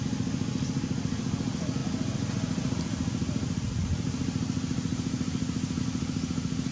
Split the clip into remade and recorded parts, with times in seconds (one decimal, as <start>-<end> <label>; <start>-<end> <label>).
0.0-6.7 recorded